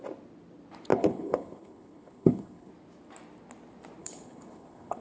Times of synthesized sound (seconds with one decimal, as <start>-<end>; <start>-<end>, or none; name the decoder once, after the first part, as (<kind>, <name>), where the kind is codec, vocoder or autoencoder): 0.9-2.7 (codec, HILCodec); 4.0-5.0